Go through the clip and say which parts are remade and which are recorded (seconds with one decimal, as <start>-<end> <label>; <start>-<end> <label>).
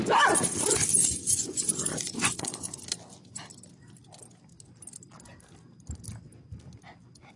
0.0-0.9 recorded; 0.9-2.8 remade; 2.8-7.4 recorded